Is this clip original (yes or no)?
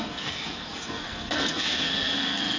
no